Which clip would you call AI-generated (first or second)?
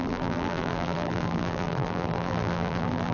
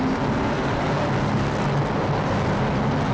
first